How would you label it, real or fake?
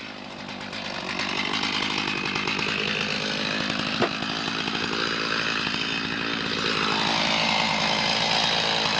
real